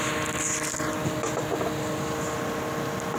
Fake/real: real